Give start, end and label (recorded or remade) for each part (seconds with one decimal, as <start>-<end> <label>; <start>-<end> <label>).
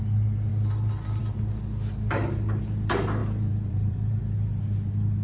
0.0-3.2 recorded; 3.2-4.2 remade; 4.2-5.2 recorded